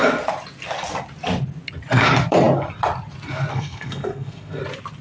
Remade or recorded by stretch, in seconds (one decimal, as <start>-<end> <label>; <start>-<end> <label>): 0.0-3.5 recorded; 3.5-4.6 remade; 4.6-5.0 recorded